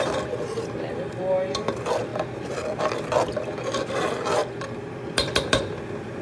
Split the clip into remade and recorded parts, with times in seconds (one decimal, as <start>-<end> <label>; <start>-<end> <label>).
0.0-6.2 remade